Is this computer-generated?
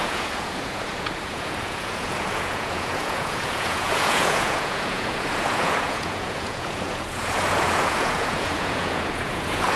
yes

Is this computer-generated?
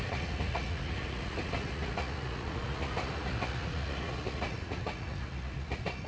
yes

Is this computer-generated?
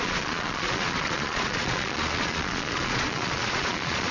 yes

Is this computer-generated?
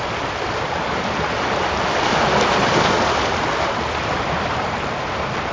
no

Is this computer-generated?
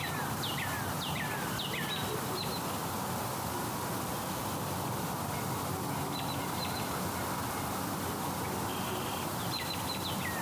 yes